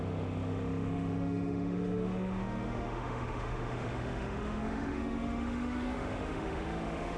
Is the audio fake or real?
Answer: fake